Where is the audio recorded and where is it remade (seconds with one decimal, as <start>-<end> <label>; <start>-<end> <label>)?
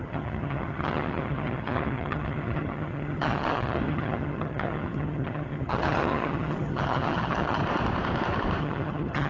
0.0-7.6 remade; 7.6-8.6 recorded; 8.6-9.3 remade